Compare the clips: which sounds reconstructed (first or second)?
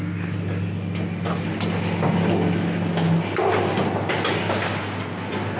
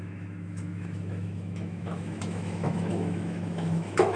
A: second